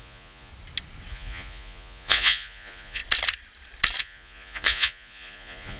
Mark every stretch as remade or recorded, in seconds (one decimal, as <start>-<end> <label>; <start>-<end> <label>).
0.0-0.5 remade; 0.5-1.1 recorded; 1.1-3.0 remade; 3.0-4.0 recorded; 4.0-5.8 remade